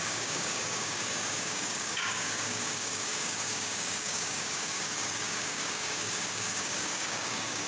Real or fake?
fake